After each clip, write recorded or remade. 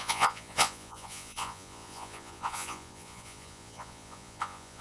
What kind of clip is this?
remade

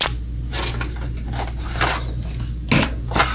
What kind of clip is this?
recorded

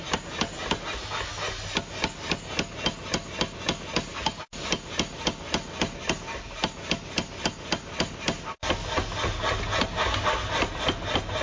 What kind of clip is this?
recorded